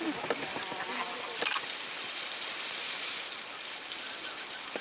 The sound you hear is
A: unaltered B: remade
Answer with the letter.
A